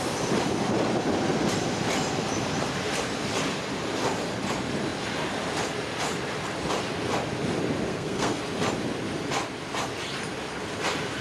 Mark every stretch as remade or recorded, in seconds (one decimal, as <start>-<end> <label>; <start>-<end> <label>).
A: 0.0-7.9 recorded; 7.9-8.4 remade; 8.4-11.2 recorded